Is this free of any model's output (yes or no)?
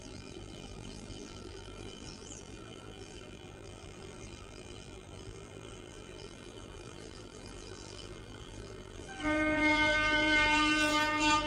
no